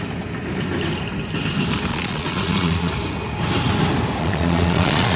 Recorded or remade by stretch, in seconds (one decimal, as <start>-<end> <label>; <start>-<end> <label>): 0.0-1.9 recorded; 1.9-2.9 remade; 2.9-4.2 recorded; 4.2-5.2 remade